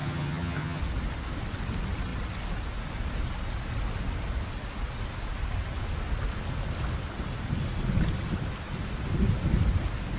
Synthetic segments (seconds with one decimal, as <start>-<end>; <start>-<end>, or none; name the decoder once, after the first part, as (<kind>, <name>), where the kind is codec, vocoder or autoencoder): 0.0-0.8 (vocoder, HiFi-GAN)